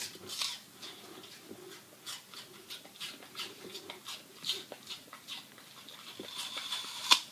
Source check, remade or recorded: recorded